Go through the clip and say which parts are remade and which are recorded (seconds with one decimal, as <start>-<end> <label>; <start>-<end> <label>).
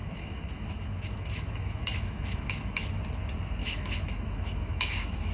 0.0-3.0 remade; 3.0-3.6 recorded; 3.6-5.3 remade